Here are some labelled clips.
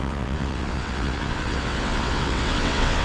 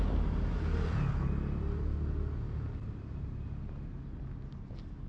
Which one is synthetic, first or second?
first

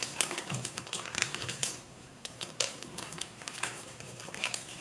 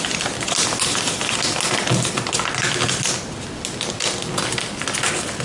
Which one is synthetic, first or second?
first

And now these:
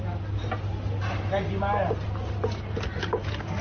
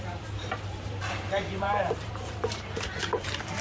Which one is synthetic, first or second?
second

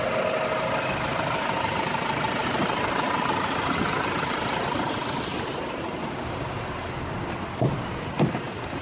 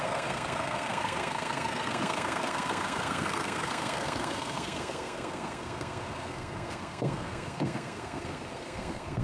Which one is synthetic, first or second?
second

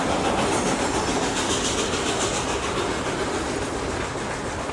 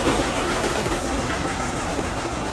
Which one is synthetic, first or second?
second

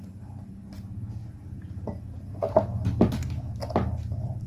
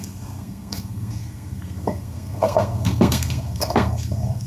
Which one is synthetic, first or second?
second